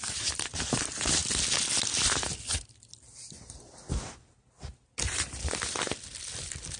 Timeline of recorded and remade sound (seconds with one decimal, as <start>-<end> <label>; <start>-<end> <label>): 0.0-6.8 recorded